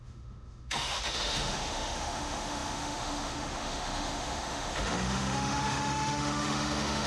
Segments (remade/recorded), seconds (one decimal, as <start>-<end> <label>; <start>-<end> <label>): 0.0-7.1 remade